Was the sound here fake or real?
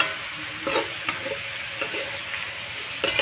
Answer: real